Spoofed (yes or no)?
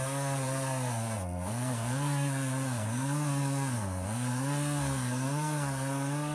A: yes